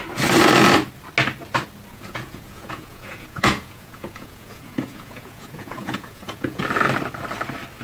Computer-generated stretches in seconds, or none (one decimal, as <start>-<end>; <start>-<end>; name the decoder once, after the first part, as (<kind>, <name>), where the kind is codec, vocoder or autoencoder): 1.9-6.6 (vocoder, Vocos)